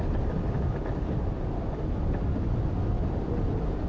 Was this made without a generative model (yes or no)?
yes